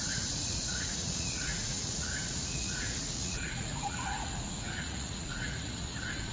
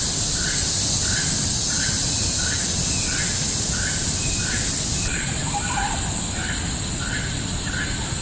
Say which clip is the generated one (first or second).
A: first